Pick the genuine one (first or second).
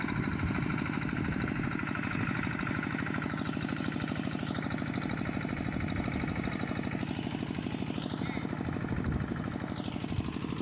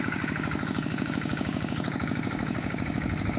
first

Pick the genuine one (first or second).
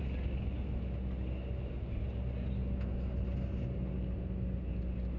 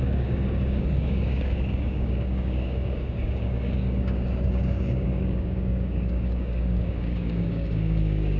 first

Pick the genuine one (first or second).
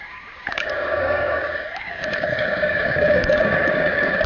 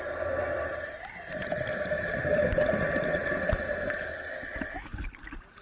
second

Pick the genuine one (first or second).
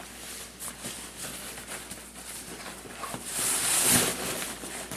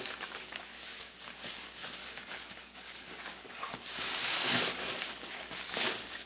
first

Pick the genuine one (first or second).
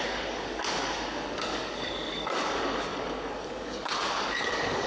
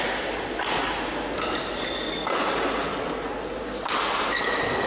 second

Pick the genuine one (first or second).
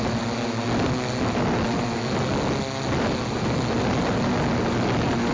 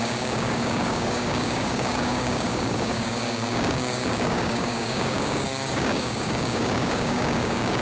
first